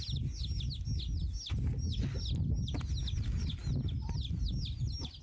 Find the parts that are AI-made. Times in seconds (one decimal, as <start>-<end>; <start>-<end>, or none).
none